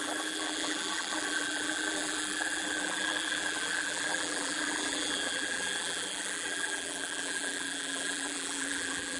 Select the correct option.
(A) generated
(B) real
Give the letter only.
A